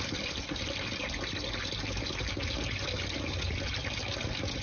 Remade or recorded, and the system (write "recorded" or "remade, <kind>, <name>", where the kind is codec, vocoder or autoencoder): recorded